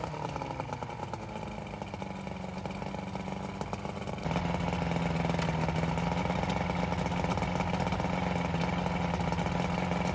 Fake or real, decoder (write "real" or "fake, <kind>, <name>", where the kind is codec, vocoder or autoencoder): real